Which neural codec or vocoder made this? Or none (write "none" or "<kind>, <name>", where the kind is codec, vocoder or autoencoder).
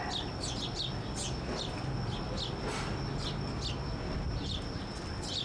none